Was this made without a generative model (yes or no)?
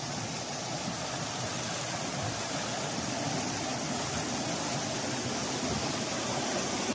yes